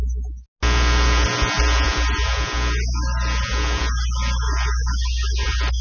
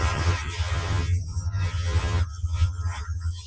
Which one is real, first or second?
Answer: first